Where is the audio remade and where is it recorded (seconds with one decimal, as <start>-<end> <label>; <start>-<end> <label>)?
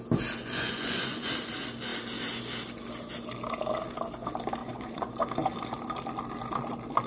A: 0.0-0.4 recorded; 0.4-1.3 remade; 1.3-4.6 recorded; 4.6-5.1 remade; 5.1-7.1 recorded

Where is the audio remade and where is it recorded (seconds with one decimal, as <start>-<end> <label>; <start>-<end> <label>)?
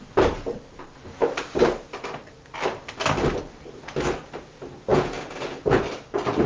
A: 0.0-4.9 recorded; 4.9-5.8 remade; 5.8-6.5 recorded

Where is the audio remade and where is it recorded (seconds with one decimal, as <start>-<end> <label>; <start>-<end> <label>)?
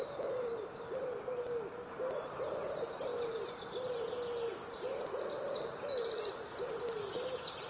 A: 0.0-7.7 recorded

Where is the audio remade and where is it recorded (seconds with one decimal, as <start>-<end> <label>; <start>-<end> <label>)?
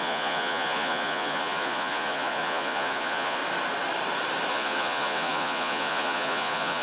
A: 0.0-3.4 remade; 3.4-4.5 recorded; 4.5-6.8 remade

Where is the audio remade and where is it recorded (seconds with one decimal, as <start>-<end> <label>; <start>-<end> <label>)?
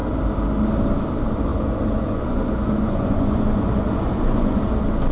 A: 0.0-1.5 recorded; 1.5-4.6 remade; 4.6-5.1 recorded